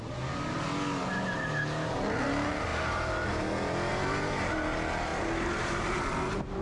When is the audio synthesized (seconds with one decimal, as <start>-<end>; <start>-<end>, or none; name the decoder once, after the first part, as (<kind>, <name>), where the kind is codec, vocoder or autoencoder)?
2.7-3.3 (vocoder, BigVGAN v2); 3.9-4.5; 5.1-6.6